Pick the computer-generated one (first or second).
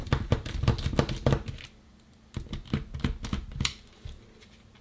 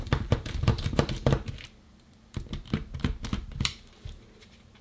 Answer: second